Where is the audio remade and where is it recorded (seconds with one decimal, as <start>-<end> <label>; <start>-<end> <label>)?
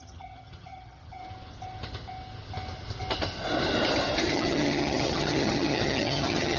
0.0-1.2 remade; 1.2-4.3 recorded; 4.3-6.6 remade